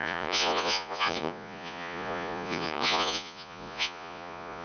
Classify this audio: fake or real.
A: fake